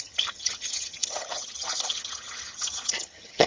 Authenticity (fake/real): fake